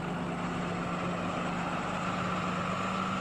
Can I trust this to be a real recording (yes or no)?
yes